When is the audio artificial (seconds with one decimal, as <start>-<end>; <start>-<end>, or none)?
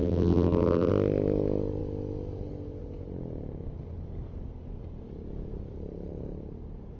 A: 0.0-0.9